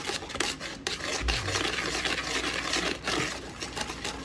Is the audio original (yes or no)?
yes